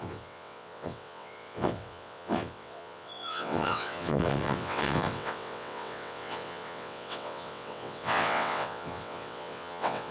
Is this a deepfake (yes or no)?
yes